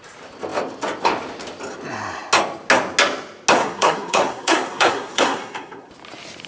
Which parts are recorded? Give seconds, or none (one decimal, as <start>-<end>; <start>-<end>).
0.0-3.6; 5.9-6.5

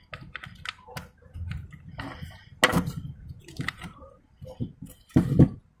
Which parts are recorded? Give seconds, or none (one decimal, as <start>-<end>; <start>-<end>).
0.0-2.7; 5.0-5.8